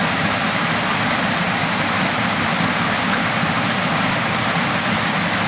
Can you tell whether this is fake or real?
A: real